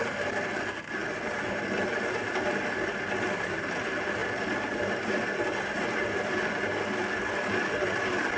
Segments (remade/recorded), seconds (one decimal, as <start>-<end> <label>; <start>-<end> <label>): 0.0-8.4 recorded